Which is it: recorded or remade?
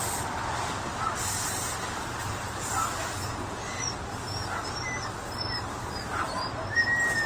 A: recorded